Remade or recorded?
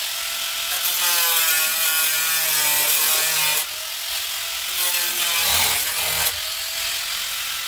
recorded